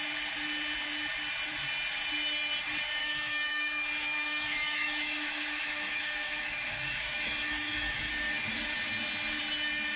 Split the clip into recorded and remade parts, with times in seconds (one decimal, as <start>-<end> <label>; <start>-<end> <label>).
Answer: 0.0-3.0 recorded; 3.0-8.1 remade; 8.1-10.0 recorded